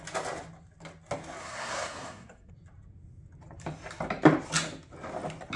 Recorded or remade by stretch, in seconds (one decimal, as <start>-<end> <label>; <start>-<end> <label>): 0.0-1.4 recorded; 1.4-2.5 remade; 2.5-5.6 recorded